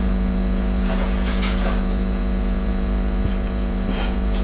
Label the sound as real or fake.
fake